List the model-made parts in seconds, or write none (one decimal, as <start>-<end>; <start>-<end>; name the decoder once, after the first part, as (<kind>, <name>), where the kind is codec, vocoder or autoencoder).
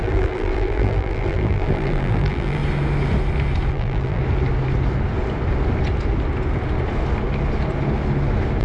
0.0-2.6 (vocoder, BigVGAN v2); 3.7-4.2